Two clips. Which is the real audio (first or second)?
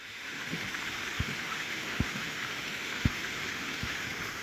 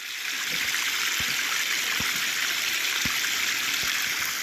second